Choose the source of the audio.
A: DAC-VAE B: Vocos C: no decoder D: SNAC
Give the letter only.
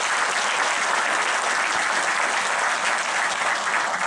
C